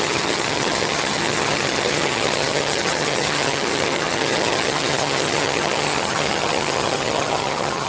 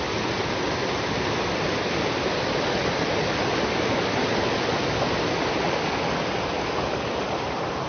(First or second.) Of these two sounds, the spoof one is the first